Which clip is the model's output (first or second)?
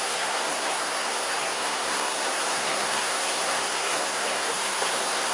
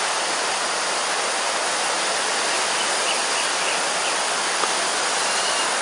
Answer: first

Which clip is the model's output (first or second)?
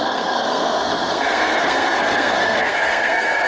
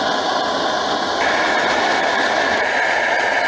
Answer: first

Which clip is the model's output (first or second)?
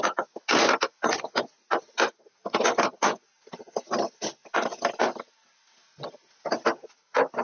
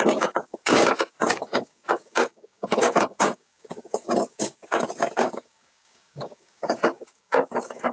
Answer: second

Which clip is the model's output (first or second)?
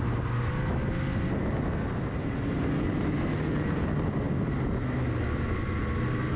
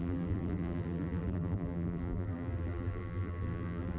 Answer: second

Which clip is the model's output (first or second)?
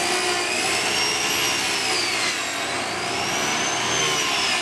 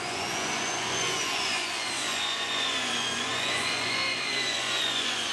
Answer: second